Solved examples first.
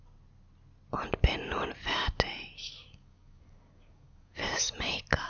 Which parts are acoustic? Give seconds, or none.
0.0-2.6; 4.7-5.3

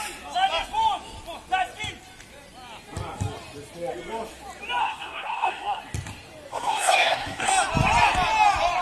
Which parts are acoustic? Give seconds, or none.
0.0-4.8; 5.8-6.5; 7.5-8.8

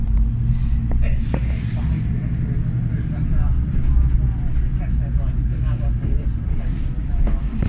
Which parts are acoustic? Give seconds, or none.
0.0-7.7